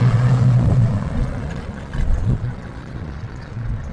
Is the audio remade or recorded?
remade